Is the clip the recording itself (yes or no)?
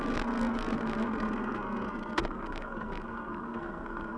no